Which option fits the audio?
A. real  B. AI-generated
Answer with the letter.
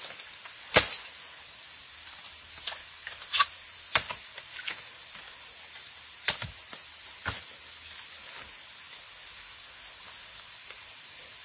A